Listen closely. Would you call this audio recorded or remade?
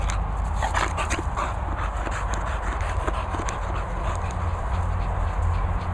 recorded